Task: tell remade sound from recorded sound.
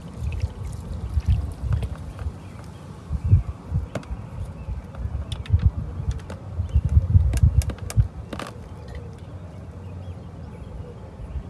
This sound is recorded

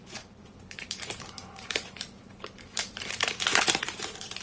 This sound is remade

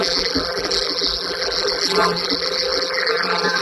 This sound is remade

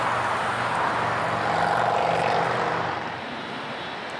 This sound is recorded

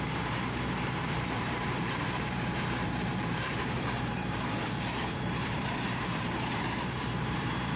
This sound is remade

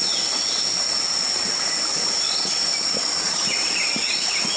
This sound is recorded